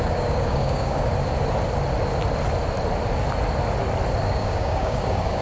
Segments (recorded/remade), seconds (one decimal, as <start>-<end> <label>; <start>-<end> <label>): 0.0-1.1 remade; 1.1-4.3 recorded; 4.3-5.4 remade